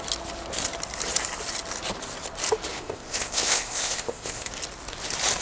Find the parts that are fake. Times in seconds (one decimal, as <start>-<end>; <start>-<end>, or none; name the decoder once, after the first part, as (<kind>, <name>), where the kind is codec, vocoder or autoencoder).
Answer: 2.7-4.5 (codec, ZipCodec)

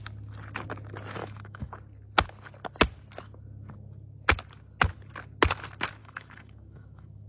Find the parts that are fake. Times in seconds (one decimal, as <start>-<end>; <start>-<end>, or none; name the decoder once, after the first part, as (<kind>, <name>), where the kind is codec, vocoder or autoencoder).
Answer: 1.2-1.7 (autoencoder, DAC-VAE); 6.0-7.3

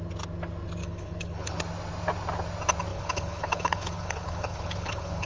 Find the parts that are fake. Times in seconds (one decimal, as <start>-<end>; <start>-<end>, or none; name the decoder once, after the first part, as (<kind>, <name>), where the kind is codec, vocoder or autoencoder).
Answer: 0.8-1.6 (codec, HILCodec); 2.9-5.3

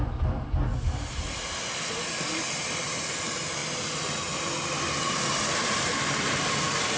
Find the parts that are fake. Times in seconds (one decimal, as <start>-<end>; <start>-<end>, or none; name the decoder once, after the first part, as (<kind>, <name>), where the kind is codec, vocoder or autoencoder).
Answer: none

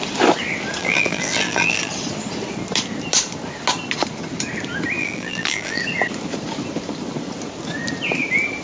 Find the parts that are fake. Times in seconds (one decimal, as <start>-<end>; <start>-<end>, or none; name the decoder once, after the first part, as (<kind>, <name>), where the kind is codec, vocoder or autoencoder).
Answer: 0.8-1.9 (vocoder, BigVGAN v2); 5.0-5.8